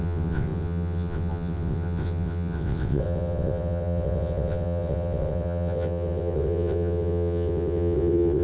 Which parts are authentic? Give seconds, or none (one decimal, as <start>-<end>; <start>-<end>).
none